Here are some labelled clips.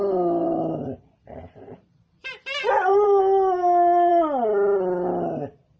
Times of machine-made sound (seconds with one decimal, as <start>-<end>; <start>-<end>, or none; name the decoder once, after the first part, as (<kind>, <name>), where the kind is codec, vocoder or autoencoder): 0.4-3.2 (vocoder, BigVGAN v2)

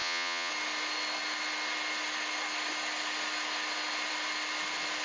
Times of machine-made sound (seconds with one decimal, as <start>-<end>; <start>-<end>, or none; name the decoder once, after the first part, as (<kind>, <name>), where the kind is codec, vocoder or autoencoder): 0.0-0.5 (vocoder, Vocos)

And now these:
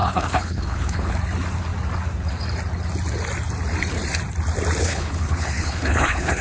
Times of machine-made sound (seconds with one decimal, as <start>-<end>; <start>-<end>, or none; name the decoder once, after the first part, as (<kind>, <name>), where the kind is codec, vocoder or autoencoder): 0.0-1.1 (codec, HILCodec); 4.8-6.4

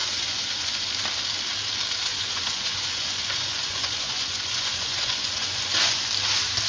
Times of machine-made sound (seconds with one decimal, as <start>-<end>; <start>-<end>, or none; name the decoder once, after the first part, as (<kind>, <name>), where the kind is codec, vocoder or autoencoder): 0.0-0.9 (vocoder, Vocos); 2.1-6.1